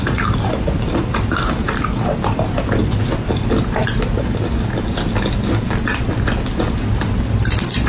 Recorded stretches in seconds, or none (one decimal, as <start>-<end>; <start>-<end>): 0.0-7.9